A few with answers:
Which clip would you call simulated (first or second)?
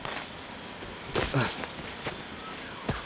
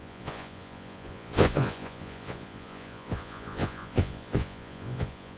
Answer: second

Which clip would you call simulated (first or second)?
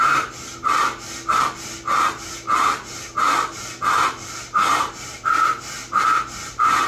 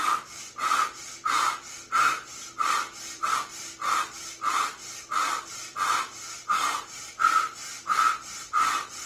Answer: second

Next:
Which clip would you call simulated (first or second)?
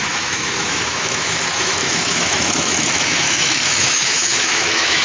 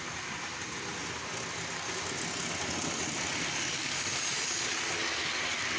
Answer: first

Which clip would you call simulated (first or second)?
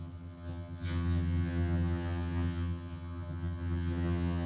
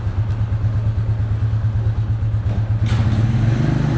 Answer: first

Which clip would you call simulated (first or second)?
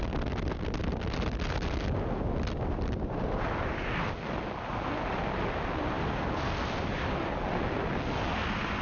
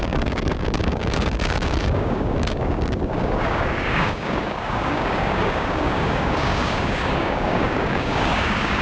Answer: second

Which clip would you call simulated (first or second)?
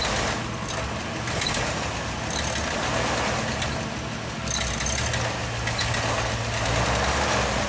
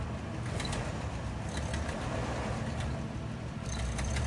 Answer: second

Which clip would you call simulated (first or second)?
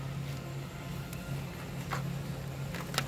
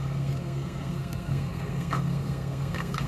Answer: second